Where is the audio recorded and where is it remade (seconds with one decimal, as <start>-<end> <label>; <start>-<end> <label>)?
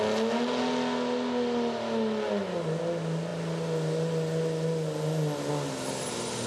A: 0.0-6.5 recorded